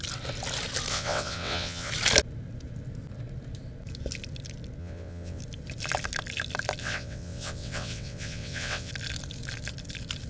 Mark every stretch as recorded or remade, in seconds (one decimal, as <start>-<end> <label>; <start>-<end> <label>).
0.0-0.9 recorded; 0.9-1.9 remade; 1.9-4.8 recorded; 4.8-5.4 remade; 5.4-6.8 recorded; 6.8-8.9 remade; 8.9-10.3 recorded